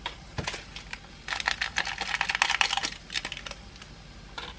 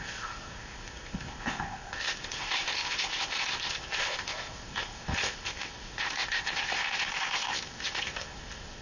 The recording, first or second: first